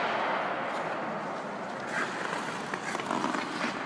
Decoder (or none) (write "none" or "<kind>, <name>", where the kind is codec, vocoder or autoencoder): none